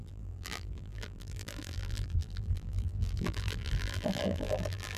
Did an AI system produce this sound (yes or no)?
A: yes